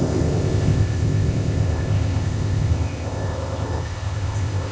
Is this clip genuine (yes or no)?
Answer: no